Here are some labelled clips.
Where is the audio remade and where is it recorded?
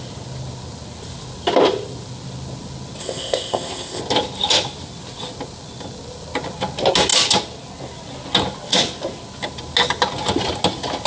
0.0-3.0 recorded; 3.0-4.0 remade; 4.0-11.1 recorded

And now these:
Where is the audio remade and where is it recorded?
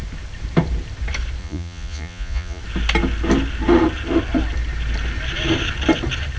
0.0-1.4 recorded; 1.4-2.6 remade; 2.6-6.4 recorded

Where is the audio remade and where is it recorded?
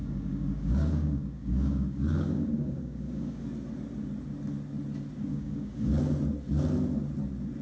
0.0-3.4 remade; 3.4-5.3 recorded; 5.3-6.0 remade; 6.0-7.6 recorded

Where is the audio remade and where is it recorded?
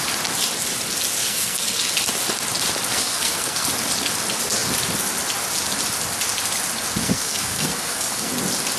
0.0-1.2 recorded; 1.2-1.9 remade; 1.9-2.9 recorded; 2.9-3.7 remade; 3.7-7.0 recorded; 7.0-8.3 remade; 8.3-8.8 recorded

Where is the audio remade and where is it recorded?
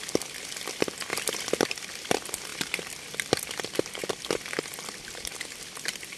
0.0-4.0 recorded; 4.0-6.2 remade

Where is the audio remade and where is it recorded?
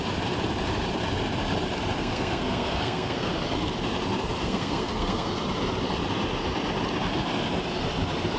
0.0-2.0 recorded; 2.0-3.3 remade; 3.3-4.4 recorded; 4.4-5.3 remade; 5.3-8.4 recorded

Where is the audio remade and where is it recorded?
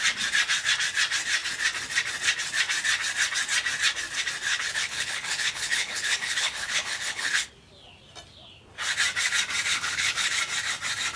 0.0-4.5 recorded; 4.5-7.5 remade; 7.5-9.7 recorded; 9.7-10.3 remade; 10.3-11.2 recorded